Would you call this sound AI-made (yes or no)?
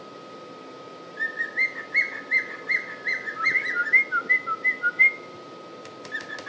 no